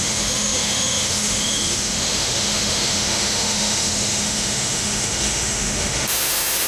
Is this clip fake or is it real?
fake